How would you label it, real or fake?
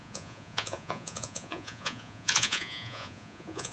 fake